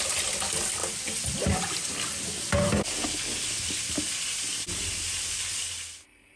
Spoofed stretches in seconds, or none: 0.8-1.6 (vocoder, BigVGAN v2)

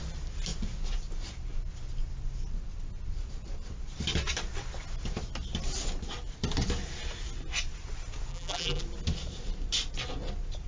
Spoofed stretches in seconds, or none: 8.3-8.8 (vocoder, BigVGAN v2)

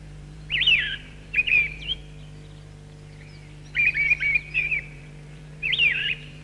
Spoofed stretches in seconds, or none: 0.0-2.0 (vocoder, BigVGAN v2); 4.8-6.4

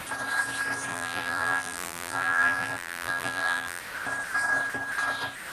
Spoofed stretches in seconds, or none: 0.9-3.8 (vocoder, BigVGAN v2)

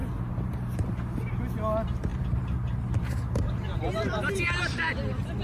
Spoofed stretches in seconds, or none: 2.1-4.9 (vocoder, BigVGAN v2)

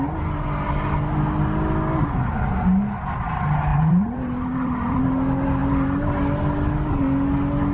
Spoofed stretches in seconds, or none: 3.7-5.0 (vocoder, BigVGAN v2)

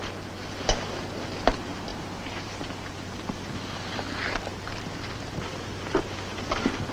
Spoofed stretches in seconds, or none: 1.9-3.5 (vocoder, BigVGAN v2); 4.5-6.2